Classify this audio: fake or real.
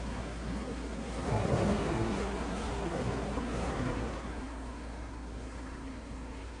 fake